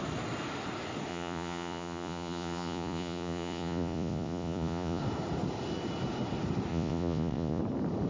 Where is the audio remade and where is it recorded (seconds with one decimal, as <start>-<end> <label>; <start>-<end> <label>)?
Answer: 0.0-1.1 recorded; 1.1-5.0 remade; 5.0-6.7 recorded; 6.7-7.6 remade; 7.6-8.1 recorded